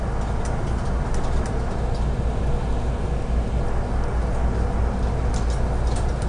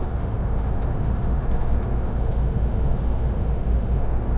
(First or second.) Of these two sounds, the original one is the first